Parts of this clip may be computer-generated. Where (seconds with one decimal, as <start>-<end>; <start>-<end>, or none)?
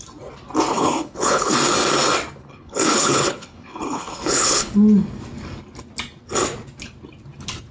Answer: 0.7-1.5; 2.4-4.7